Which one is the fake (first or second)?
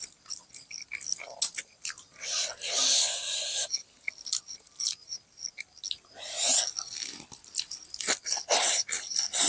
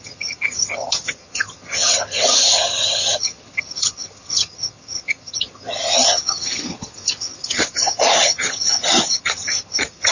second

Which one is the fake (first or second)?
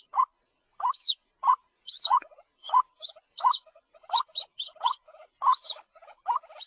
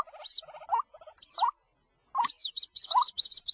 first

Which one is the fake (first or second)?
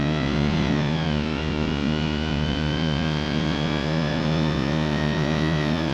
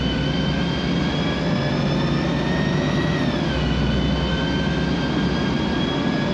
first